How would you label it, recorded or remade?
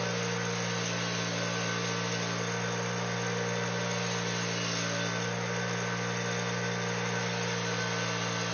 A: recorded